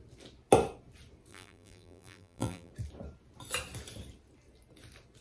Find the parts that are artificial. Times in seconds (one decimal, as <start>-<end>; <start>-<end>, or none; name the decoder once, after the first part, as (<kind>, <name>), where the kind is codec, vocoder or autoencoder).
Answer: 1.3-2.7 (vocoder, BigVGAN v2)